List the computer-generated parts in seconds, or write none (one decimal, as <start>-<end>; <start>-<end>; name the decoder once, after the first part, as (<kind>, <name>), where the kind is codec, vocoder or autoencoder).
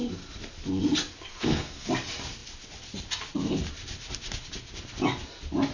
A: 1.3-1.9 (codec, SNAC)